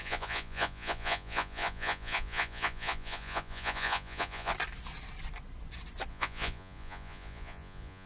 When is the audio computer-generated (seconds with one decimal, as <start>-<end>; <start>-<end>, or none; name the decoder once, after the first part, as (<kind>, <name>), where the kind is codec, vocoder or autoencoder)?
0.0-4.5 (vocoder, Vocos); 6.1-8.1